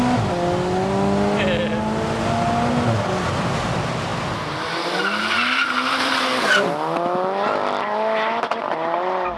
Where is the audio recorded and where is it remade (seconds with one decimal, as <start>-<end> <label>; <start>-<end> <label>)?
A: 0.0-9.4 recorded